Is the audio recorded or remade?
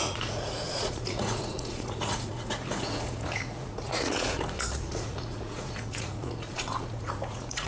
remade